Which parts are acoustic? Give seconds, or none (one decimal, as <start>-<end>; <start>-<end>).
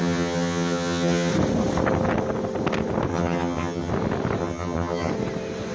1.3-3.1; 3.9-4.4; 5.1-5.7